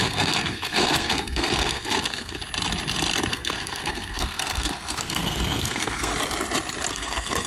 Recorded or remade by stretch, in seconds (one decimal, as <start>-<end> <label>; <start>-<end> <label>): 0.0-2.4 remade; 2.4-3.3 recorded; 3.3-6.1 remade; 6.1-6.9 recorded; 6.9-7.5 remade